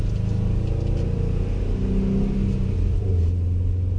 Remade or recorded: recorded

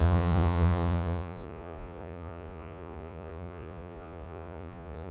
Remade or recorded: remade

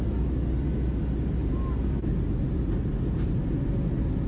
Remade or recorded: recorded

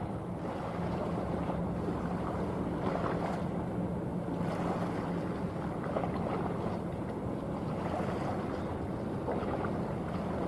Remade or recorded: recorded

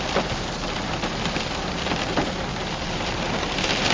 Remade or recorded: recorded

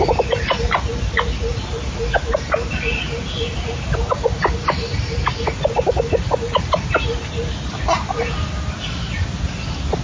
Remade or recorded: recorded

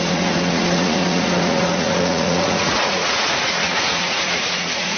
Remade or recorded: remade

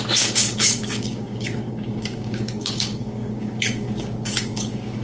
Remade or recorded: remade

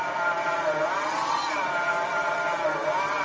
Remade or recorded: recorded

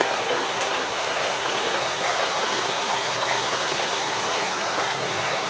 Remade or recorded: remade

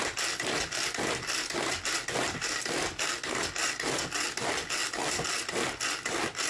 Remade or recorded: recorded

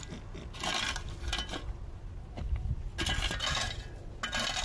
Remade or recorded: recorded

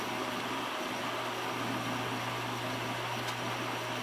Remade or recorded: recorded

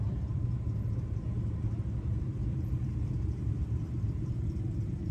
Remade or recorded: remade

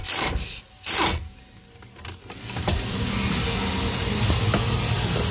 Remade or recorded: recorded